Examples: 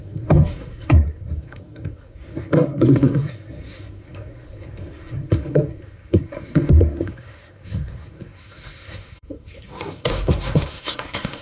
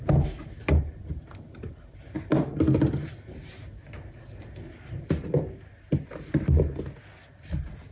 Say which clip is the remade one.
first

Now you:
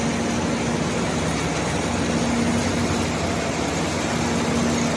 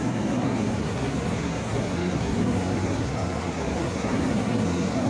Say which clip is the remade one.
second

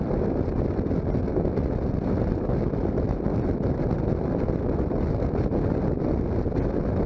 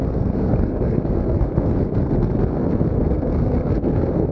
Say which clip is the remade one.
second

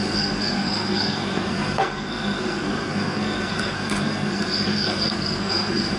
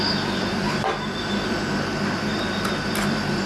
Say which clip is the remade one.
first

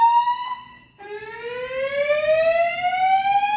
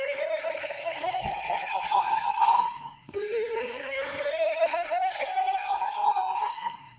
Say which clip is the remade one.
second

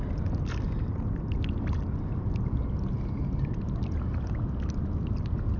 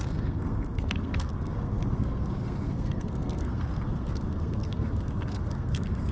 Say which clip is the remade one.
second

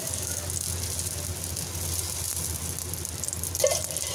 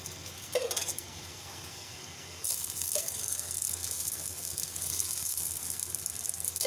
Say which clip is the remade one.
second